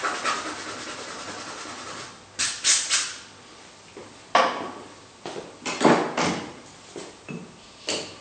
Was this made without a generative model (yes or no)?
yes